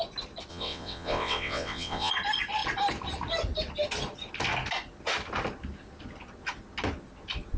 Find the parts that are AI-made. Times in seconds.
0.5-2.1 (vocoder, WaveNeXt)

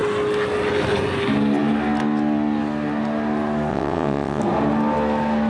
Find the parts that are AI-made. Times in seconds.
3.7-4.4 (vocoder, WaveNeXt)

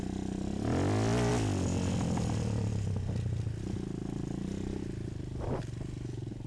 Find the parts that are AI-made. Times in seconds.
none